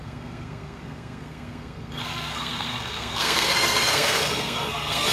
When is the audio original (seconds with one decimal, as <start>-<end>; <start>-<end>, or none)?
none